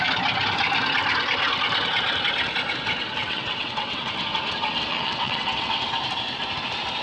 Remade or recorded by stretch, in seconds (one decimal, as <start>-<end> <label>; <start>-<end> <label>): 0.0-3.2 recorded; 3.2-4.1 remade; 4.1-4.9 recorded; 4.9-5.9 remade; 5.9-7.0 recorded